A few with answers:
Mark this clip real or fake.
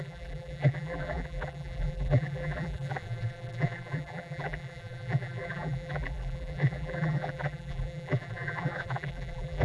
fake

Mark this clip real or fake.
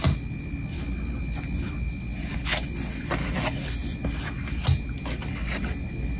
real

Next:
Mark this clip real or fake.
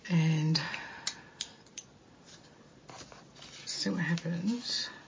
real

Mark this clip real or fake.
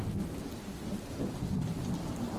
real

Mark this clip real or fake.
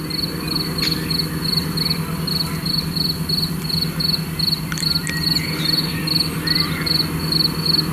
real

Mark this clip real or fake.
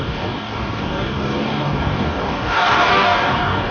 fake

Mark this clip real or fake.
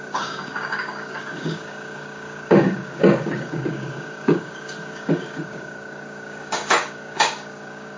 fake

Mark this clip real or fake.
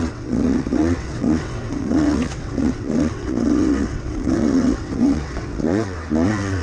fake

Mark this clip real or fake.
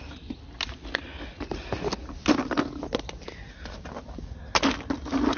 real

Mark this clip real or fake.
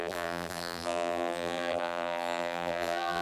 fake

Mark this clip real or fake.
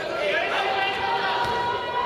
real